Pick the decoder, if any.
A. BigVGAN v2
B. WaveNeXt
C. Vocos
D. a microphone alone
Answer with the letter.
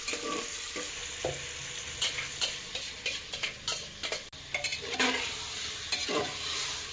D